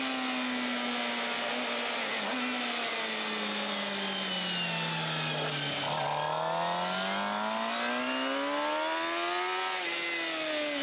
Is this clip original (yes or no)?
yes